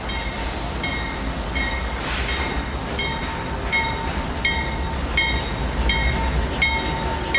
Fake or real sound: real